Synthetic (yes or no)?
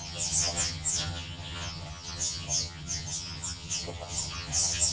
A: yes